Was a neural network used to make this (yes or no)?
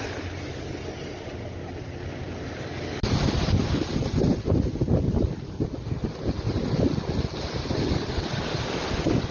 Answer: no